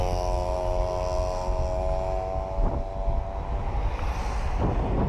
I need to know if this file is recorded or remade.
recorded